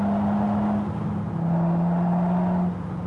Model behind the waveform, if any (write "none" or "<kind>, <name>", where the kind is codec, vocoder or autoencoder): none